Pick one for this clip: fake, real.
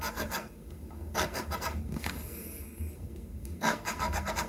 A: fake